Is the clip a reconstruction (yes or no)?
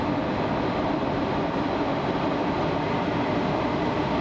no